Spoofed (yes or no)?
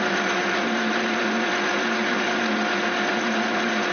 no